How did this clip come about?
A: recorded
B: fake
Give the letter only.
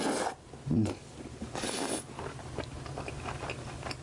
A